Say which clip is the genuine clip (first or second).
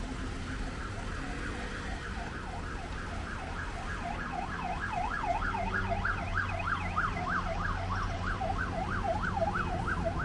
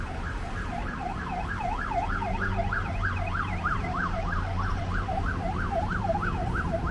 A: first